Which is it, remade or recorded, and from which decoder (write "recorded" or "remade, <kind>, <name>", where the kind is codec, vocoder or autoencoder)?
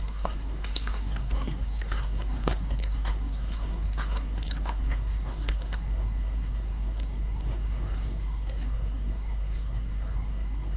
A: remade, codec, SNAC